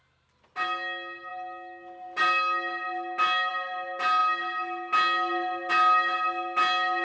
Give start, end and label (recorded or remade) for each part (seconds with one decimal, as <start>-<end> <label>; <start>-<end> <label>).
0.0-7.0 recorded